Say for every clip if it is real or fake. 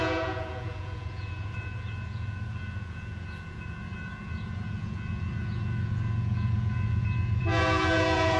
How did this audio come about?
fake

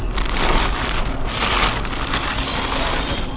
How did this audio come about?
real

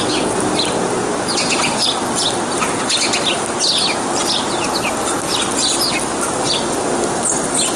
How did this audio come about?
real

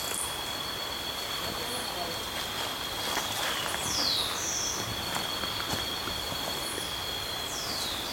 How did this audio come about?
real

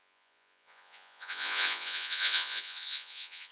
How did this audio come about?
fake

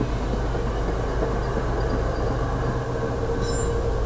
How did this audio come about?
real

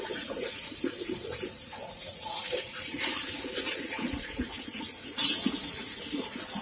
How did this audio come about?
fake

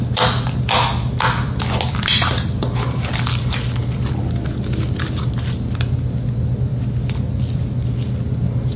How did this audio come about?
real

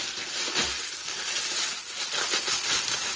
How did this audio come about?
real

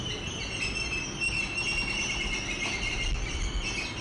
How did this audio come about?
real